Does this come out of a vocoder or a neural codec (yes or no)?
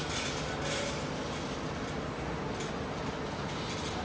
no